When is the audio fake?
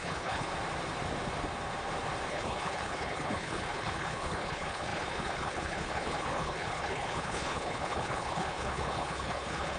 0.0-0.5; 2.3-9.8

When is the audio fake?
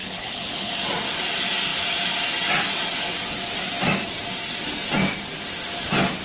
0.0-0.7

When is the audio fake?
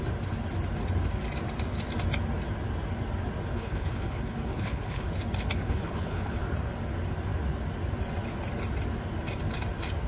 3.5-5.1; 5.6-6.4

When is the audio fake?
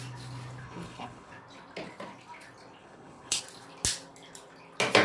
0.6-1.3; 2.8-3.4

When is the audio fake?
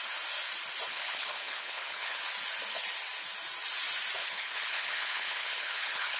0.9-2.2; 4.2-6.2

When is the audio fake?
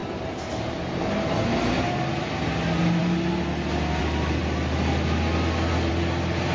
none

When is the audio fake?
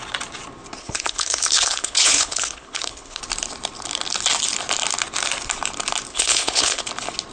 0.8-3.2; 6.1-6.8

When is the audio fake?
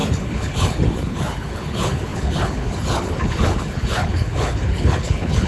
0.0-5.5